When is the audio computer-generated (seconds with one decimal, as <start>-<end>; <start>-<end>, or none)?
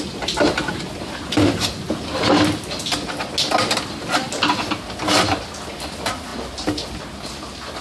none